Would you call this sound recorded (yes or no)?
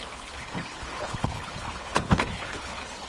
no